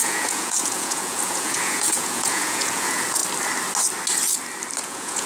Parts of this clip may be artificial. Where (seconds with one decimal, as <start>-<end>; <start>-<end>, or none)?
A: 0.0-3.2; 4.8-5.3